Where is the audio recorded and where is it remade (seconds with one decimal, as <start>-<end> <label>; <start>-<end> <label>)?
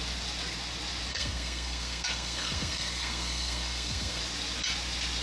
0.0-1.1 recorded; 1.1-4.2 remade; 4.2-5.2 recorded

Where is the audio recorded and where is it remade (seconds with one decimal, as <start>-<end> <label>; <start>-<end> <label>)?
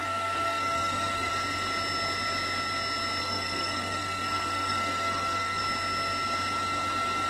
0.0-1.3 remade; 1.3-3.2 recorded; 3.2-5.6 remade; 5.6-7.3 recorded